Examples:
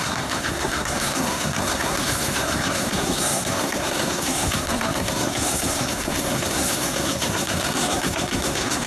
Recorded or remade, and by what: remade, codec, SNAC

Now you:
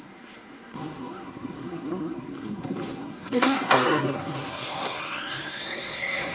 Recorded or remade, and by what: remade, codec, SNAC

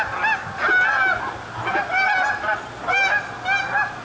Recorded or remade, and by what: recorded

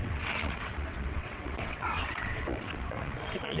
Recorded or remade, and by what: remade, vocoder, WaveNeXt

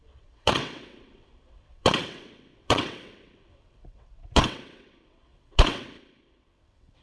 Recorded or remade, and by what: remade, vocoder, WaveNeXt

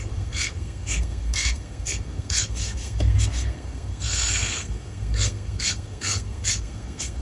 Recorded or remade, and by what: remade, codec, SNAC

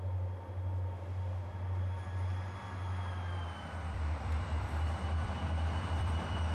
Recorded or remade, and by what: remade, vocoder, BigVGAN v2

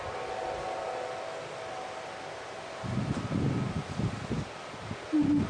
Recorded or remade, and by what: recorded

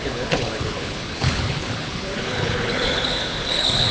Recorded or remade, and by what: remade, codec, HILCodec